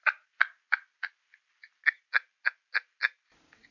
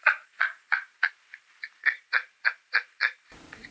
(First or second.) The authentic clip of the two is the first